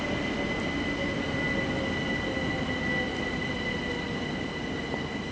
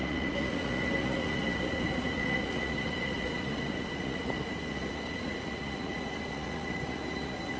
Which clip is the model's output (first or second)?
second